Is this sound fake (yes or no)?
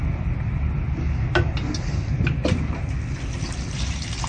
no